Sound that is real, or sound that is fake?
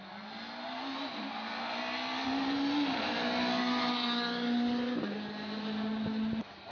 real